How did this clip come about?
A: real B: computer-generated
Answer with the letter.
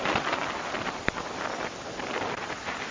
A